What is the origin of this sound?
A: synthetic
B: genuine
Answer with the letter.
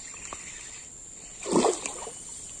B